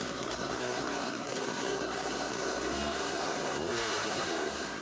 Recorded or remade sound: remade